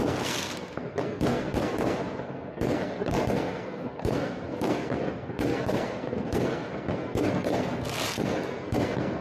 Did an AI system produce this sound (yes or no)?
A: yes